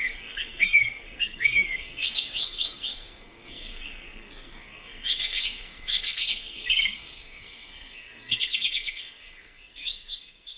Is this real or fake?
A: fake